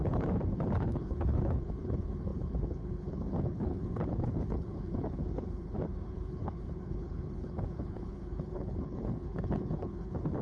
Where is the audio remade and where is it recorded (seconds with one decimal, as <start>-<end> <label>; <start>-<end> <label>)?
0.0-10.4 remade